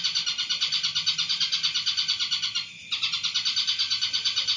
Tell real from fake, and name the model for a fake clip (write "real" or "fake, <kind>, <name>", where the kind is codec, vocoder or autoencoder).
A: real